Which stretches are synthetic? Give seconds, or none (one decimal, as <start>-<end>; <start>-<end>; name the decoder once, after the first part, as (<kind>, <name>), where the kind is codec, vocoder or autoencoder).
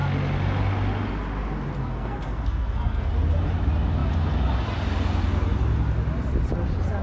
1.8-3.1 (codec, SNAC)